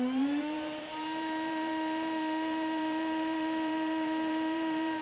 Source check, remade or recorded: remade